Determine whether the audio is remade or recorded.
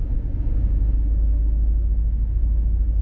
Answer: recorded